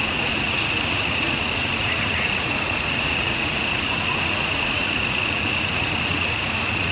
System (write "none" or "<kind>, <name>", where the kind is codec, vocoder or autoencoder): vocoder, Vocos